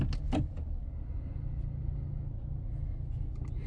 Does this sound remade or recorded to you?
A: recorded